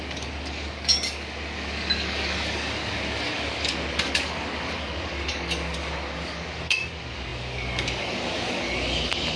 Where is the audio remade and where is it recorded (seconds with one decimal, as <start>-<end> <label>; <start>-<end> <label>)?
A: 0.0-9.4 remade